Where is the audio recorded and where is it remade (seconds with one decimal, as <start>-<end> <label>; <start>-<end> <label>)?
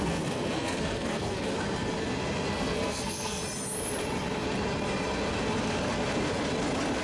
0.0-1.5 remade; 1.5-2.5 recorded; 2.5-3.4 remade; 3.4-7.0 recorded